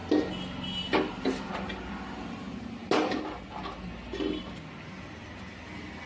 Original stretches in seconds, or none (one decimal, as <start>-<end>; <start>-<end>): 0.0-6.1